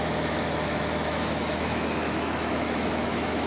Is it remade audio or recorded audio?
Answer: remade